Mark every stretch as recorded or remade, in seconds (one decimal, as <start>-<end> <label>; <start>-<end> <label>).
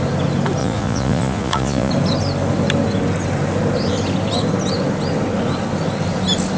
0.0-0.6 recorded; 0.6-1.9 remade; 1.9-6.6 recorded